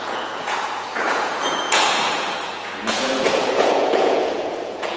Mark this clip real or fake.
fake